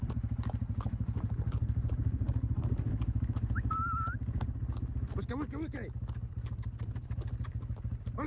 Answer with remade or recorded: recorded